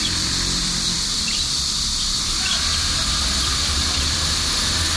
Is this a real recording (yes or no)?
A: no